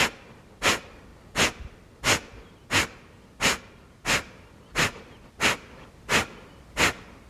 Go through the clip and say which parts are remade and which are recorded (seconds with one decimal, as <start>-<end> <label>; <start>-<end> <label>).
0.0-7.3 recorded